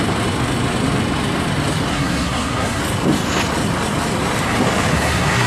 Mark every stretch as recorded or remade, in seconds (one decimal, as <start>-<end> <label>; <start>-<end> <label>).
0.0-1.9 recorded; 1.9-2.8 remade; 2.8-4.9 recorded; 4.9-5.5 remade